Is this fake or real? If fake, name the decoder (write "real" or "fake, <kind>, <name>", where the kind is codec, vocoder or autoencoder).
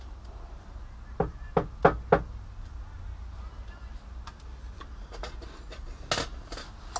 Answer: real